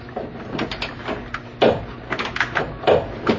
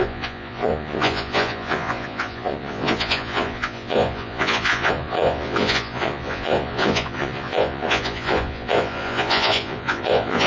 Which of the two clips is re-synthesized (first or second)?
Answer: second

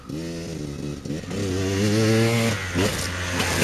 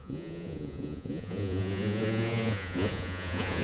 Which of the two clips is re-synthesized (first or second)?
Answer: second